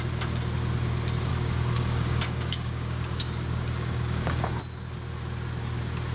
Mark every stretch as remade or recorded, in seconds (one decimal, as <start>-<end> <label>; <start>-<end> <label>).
0.0-1.3 recorded; 1.3-4.6 remade; 4.6-6.1 recorded